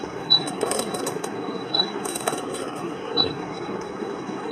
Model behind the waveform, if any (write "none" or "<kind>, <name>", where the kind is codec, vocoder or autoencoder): codec, SNAC